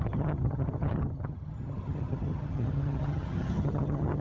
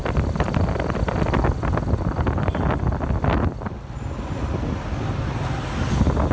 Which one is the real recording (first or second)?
second